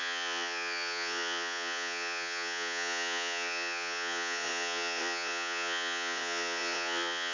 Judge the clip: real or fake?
fake